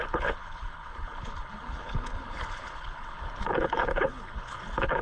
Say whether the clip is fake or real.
fake